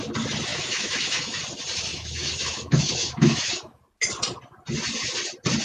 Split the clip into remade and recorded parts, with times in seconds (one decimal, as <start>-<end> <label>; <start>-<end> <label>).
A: 0.0-0.5 recorded; 0.5-1.4 remade; 1.4-1.9 recorded; 1.9-3.8 remade; 3.8-5.6 recorded